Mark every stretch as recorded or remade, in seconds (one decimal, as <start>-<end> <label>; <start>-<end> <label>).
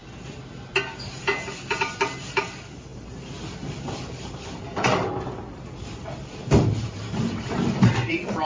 0.0-1.1 recorded; 1.1-8.4 remade